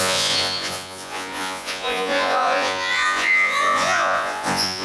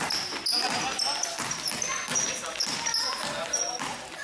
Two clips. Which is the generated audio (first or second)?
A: first